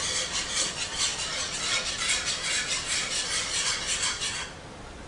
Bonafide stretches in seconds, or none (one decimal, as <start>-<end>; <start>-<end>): none